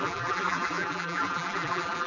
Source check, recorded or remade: remade